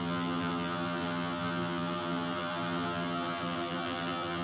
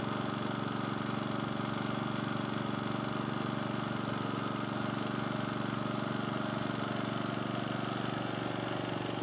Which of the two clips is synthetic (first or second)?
first